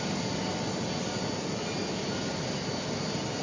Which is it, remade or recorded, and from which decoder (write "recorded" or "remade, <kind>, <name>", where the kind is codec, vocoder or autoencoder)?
recorded